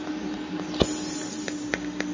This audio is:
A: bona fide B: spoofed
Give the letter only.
A